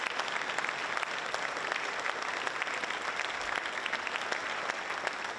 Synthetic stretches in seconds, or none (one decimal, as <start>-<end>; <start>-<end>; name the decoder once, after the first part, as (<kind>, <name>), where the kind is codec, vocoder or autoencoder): none